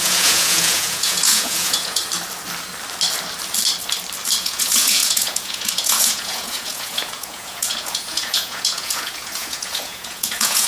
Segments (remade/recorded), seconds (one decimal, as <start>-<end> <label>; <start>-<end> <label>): 0.0-2.0 remade; 2.0-4.4 recorded; 4.4-10.7 remade